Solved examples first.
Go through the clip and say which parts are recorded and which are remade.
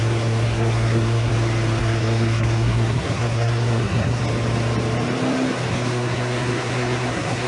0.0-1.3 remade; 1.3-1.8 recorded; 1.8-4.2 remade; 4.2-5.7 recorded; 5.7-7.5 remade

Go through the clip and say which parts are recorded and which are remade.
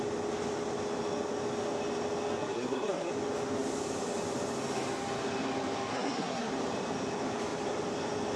0.0-2.4 recorded; 2.4-3.1 remade; 3.1-5.9 recorded; 5.9-6.5 remade; 6.5-8.4 recorded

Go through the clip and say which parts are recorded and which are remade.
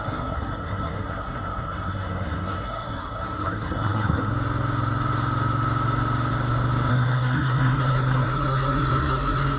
0.0-4.3 remade; 4.3-6.9 recorded; 6.9-9.6 remade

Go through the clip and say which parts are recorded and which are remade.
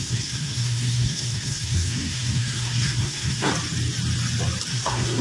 0.0-3.5 remade; 3.5-4.7 recorded; 4.7-5.2 remade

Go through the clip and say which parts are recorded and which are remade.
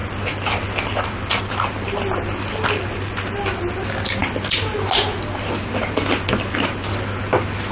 0.0-7.7 recorded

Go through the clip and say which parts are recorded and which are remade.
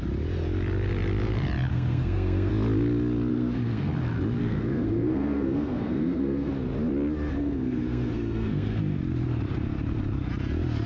0.0-1.7 recorded; 1.7-2.5 remade; 2.5-3.3 recorded; 3.3-3.9 remade; 3.9-4.4 recorded; 4.4-6.5 remade; 6.5-7.4 recorded; 7.4-8.8 remade; 8.8-10.9 recorded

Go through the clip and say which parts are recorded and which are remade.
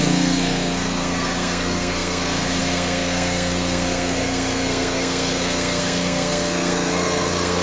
0.0-7.6 remade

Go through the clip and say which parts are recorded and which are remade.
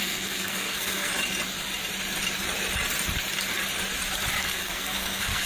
0.0-1.1 remade; 1.1-4.4 recorded; 4.4-5.5 remade